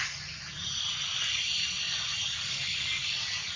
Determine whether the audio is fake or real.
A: real